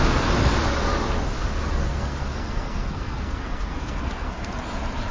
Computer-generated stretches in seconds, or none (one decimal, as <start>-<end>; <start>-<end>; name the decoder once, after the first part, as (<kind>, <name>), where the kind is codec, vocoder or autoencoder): 1.4-4.5 (codec, SNAC)